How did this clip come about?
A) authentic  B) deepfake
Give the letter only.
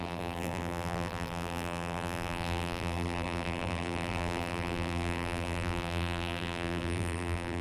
B